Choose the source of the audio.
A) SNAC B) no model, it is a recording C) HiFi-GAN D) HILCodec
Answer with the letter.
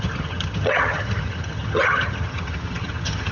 C